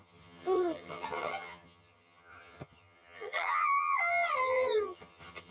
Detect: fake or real fake